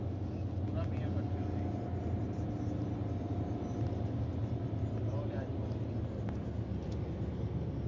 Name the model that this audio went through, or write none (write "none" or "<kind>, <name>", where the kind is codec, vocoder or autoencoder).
none